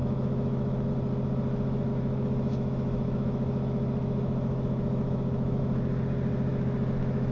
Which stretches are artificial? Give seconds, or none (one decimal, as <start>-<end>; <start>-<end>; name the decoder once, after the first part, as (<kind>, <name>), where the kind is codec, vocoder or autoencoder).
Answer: 0.0-0.9 (autoencoder, DAC-VAE); 1.9-5.6; 6.5-7.3